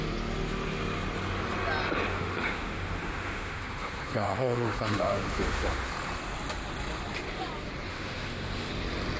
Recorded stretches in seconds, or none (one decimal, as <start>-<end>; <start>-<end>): 0.0-2.1; 5.9-7.9; 8.7-9.2